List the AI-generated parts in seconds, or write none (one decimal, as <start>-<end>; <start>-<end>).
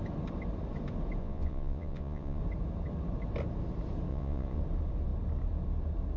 1.2-2.4; 4.1-4.6